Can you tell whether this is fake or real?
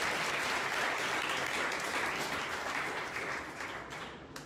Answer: real